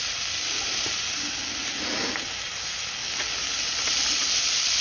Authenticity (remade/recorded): recorded